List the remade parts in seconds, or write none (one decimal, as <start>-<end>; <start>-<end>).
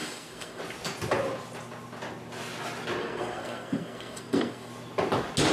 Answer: 0.0-0.6; 3.0-4.7